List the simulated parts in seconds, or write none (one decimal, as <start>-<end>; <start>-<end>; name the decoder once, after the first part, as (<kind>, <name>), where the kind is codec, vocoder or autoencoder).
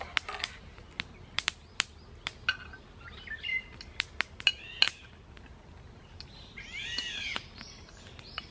none